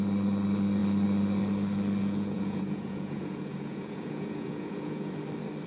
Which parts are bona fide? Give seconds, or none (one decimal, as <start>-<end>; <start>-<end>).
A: 0.0-2.0; 5.1-5.7